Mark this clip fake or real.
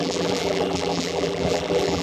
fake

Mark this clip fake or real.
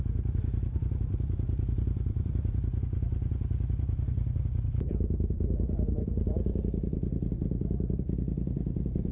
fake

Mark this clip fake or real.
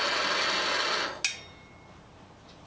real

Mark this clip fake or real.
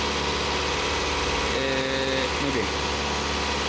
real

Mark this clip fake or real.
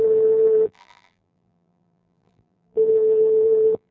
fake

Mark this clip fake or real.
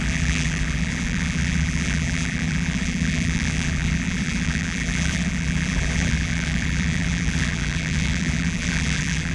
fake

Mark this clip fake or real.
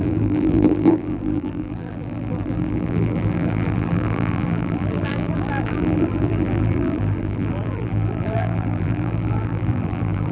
fake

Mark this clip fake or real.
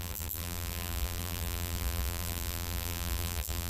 fake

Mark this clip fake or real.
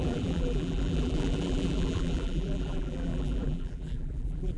fake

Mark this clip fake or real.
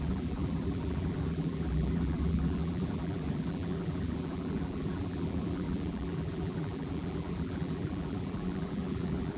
fake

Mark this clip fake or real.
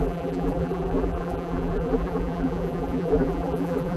fake